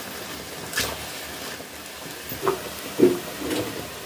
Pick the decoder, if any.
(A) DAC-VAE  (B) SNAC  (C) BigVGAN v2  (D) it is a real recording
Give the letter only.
D